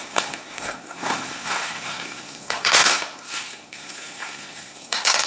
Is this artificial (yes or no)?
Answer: yes